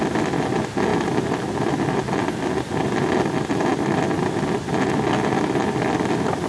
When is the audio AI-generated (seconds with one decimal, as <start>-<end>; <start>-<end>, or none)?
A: none